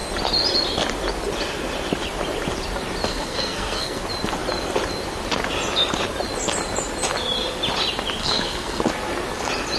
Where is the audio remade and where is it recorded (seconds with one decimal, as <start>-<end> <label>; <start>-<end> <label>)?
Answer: 0.0-3.1 recorded; 3.1-4.0 remade; 4.0-8.2 recorded; 8.2-8.8 remade; 8.8-9.8 recorded